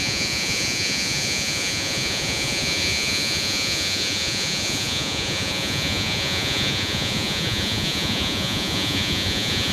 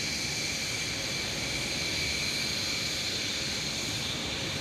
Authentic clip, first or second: second